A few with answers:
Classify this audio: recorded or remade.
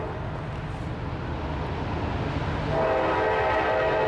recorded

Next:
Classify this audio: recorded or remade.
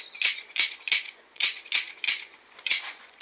remade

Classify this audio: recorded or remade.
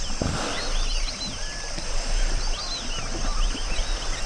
recorded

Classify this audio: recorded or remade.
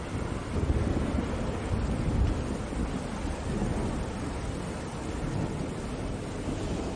recorded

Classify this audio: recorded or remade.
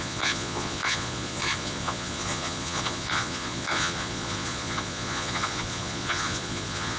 remade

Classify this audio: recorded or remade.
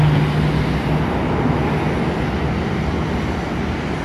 recorded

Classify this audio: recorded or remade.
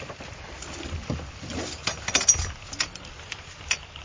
recorded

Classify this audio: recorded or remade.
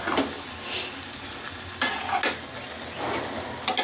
recorded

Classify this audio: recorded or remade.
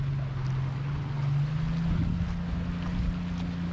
recorded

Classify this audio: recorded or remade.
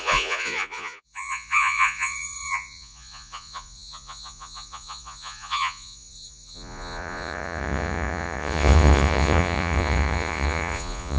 remade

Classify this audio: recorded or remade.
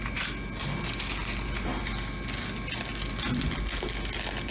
recorded